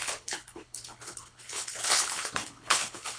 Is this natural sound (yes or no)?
no